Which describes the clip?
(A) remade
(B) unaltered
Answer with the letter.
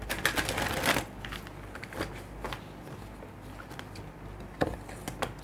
B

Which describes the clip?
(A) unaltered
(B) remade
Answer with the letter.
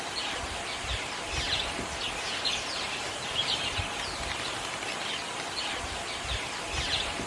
A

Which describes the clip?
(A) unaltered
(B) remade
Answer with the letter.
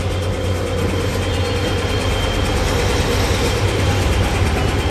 A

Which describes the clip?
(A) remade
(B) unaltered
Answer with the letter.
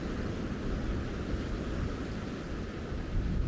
B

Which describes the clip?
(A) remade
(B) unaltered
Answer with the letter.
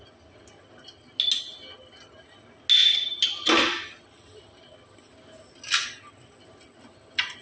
B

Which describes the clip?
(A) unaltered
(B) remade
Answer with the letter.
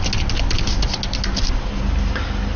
A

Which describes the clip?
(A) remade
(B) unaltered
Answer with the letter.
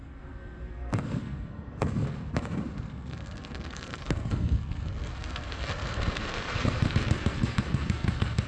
A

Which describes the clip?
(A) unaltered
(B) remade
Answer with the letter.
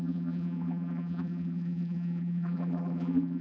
B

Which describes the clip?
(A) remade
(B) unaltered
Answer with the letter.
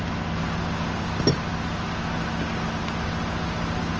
B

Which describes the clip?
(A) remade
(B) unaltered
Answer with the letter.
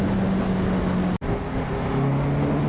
B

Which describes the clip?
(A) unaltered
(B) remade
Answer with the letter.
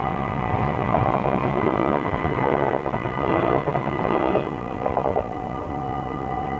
B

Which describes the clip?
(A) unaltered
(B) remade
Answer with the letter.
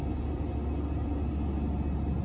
A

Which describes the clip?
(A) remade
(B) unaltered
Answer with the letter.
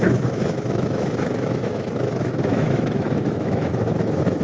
A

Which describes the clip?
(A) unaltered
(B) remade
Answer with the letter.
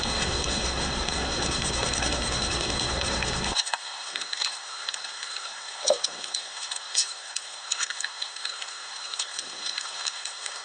B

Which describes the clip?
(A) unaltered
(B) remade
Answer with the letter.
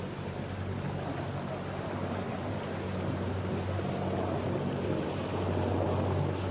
A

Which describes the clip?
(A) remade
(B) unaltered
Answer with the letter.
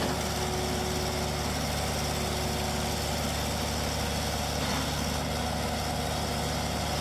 B